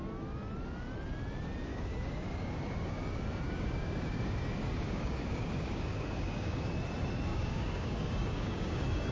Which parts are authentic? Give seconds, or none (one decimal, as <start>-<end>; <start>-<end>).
0.0-1.7; 6.7-7.3